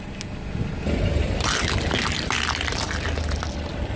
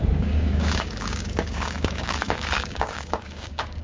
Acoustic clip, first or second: first